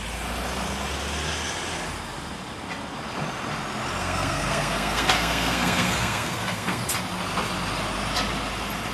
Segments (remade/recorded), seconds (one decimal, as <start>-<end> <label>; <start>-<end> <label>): 0.0-4.0 recorded; 4.0-6.8 remade; 6.8-8.9 recorded